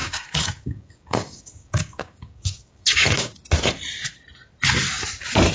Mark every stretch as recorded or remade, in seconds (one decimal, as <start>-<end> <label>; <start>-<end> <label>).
0.0-3.3 remade; 3.3-5.5 recorded